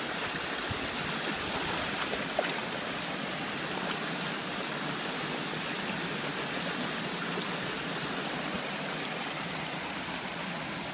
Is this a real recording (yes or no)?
yes